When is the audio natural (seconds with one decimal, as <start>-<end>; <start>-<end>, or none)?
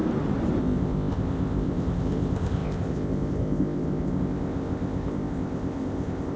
0.0-0.6